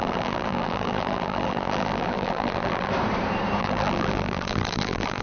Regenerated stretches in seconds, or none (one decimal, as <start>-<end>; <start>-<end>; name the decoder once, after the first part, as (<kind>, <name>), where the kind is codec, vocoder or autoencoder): 0.0-2.9 (vocoder, BigVGAN v2); 3.6-5.2